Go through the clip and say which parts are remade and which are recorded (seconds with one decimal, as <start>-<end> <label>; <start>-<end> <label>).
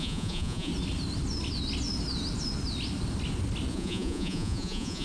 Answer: 0.0-0.7 remade; 0.7-3.7 recorded; 3.7-5.0 remade